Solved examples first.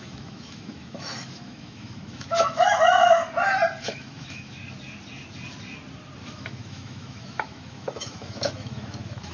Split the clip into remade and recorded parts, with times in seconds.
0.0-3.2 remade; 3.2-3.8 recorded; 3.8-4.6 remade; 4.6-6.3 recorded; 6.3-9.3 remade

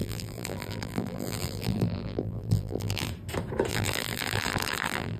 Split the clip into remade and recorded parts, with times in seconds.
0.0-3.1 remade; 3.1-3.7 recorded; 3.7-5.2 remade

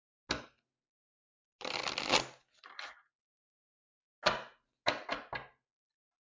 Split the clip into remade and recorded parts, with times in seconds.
0.0-6.2 recorded

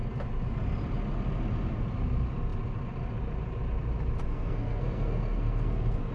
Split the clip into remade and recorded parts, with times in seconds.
0.0-4.3 recorded; 4.3-6.1 remade

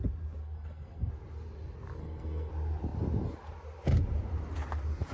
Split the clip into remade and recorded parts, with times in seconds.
0.0-0.4 recorded; 0.4-1.1 remade; 1.1-2.0 recorded; 2.0-2.5 remade; 2.5-5.1 recorded

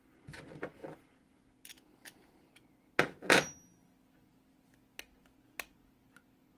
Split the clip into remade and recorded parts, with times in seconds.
0.0-6.6 recorded

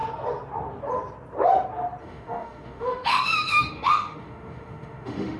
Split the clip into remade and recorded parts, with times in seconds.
0.0-2.0 recorded; 2.0-5.4 remade